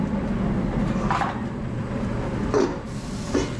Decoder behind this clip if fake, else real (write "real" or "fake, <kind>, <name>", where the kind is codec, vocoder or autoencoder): fake, vocoder, BigVGAN v2